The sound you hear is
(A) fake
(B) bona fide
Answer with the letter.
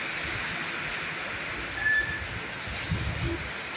B